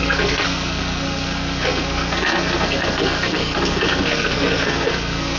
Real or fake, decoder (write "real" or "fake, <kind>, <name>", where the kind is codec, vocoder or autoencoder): fake, codec, SNAC